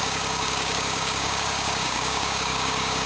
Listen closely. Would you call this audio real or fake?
fake